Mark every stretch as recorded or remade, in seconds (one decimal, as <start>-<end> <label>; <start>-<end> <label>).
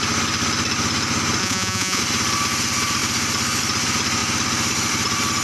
0.0-1.4 recorded; 1.4-2.0 remade; 2.0-5.4 recorded